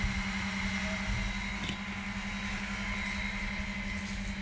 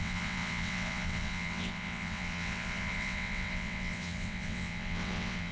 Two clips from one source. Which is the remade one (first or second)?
second